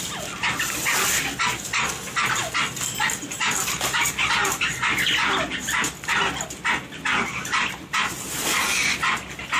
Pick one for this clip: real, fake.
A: real